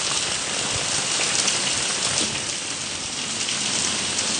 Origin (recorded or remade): recorded